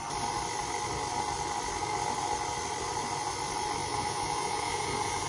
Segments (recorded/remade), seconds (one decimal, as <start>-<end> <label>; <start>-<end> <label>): 0.0-3.8 recorded; 3.8-5.3 remade